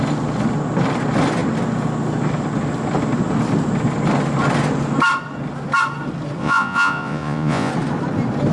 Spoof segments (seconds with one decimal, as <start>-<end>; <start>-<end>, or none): 6.4-7.7